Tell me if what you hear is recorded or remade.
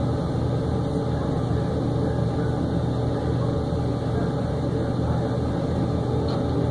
recorded